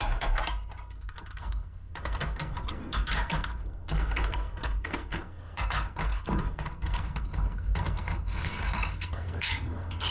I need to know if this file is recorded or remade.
remade